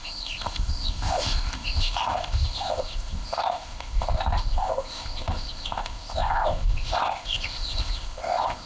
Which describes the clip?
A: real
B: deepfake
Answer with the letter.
B